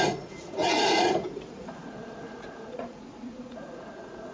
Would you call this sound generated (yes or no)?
yes